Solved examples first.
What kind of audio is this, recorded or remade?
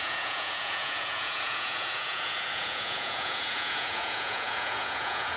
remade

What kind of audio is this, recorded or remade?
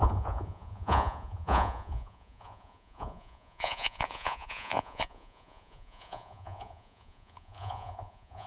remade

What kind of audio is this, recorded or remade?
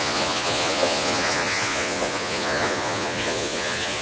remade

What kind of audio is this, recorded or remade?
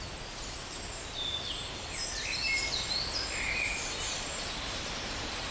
recorded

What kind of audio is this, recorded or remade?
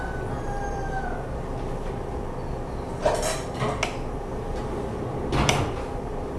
recorded